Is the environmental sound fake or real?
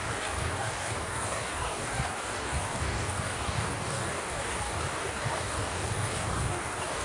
fake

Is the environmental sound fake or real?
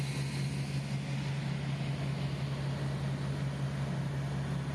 real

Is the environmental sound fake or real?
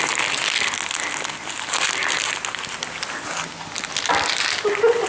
real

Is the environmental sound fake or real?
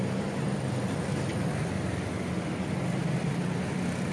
real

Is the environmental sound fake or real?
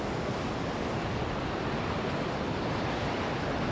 real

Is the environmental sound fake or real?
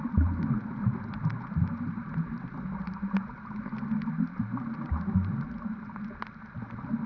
real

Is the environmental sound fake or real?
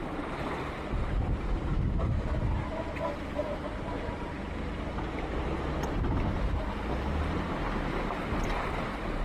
real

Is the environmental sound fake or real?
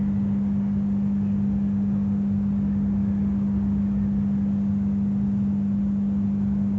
real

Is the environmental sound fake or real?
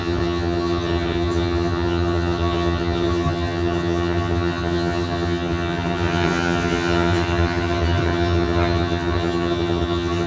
fake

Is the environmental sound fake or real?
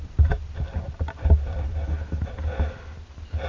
real